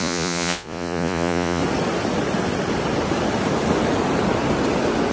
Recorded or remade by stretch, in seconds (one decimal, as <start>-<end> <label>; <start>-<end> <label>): 0.0-1.6 remade; 1.6-5.1 recorded